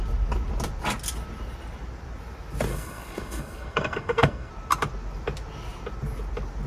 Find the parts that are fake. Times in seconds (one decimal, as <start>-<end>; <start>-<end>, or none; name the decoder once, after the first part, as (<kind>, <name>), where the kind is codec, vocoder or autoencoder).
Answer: 2.7-4.5 (codec, SNAC)